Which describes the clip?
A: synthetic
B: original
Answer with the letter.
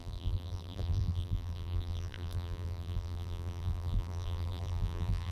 A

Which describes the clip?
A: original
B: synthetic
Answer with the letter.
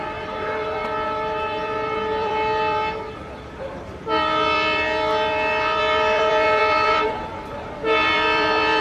B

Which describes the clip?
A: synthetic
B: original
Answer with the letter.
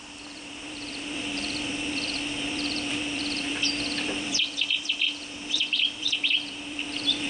A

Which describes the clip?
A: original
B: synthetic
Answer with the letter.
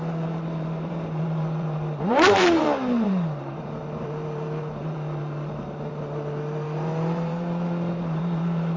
B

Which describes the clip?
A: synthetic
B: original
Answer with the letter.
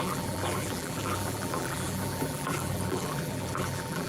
A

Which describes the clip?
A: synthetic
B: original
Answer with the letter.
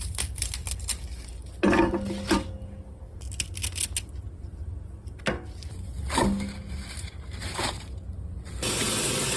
B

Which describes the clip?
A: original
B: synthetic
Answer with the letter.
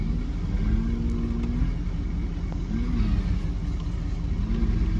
A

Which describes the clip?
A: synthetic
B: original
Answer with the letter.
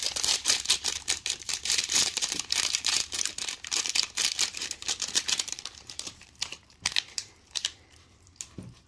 A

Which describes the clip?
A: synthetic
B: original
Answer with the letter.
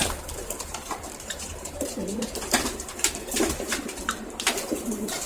A